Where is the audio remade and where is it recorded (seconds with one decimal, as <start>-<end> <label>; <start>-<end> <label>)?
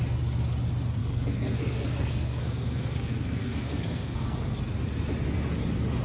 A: 0.0-1.0 recorded; 1.0-4.6 remade; 4.6-6.0 recorded